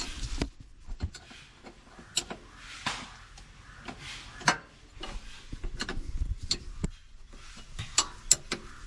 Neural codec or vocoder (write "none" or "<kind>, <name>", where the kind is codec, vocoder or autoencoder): none